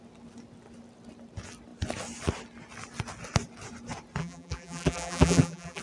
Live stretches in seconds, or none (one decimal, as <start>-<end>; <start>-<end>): 0.0-4.2